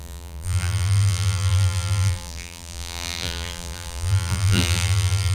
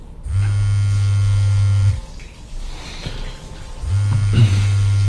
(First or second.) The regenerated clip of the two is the first